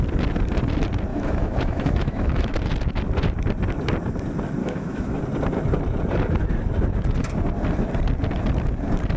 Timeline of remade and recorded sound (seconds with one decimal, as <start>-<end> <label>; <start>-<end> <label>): 0.0-1.1 recorded; 1.1-2.6 remade; 2.6-4.6 recorded; 4.6-5.2 remade; 5.2-9.2 recorded